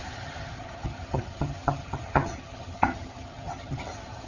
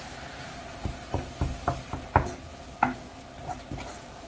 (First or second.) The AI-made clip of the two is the first